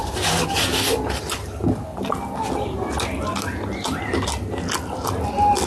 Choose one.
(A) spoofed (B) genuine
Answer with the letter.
B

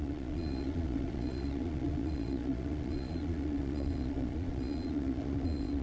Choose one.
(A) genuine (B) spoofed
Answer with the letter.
B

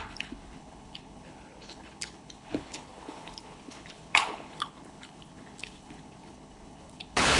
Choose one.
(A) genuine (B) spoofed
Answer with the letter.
B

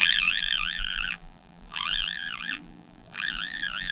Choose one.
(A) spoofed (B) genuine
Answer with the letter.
A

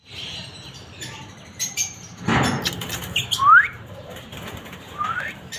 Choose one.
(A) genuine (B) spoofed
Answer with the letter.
B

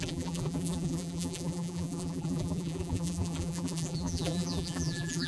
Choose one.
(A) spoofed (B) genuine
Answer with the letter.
A